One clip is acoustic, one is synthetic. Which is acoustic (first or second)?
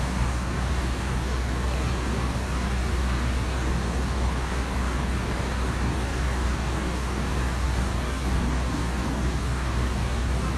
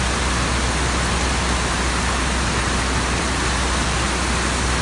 second